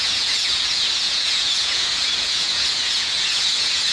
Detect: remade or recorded remade